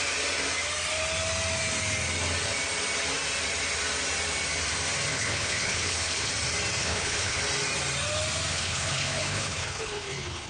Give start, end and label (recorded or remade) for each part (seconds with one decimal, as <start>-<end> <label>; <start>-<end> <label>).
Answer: 0.0-5.1 recorded; 5.1-6.3 remade; 6.3-6.8 recorded; 6.8-7.4 remade; 7.4-8.5 recorded; 8.5-10.5 remade